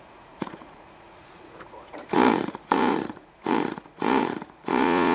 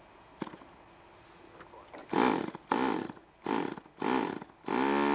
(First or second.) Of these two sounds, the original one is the second